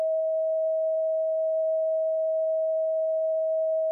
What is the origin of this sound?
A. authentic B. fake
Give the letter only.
B